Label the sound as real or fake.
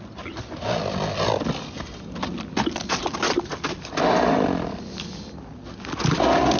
real